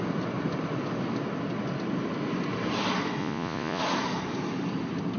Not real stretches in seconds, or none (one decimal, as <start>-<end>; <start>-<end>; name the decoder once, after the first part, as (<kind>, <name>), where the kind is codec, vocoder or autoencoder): 3.2-3.8 (vocoder, Vocos)